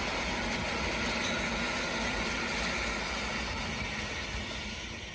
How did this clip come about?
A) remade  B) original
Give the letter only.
B